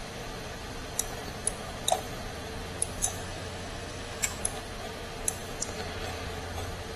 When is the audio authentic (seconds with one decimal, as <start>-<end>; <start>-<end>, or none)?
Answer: 0.0-3.0; 4.4-7.0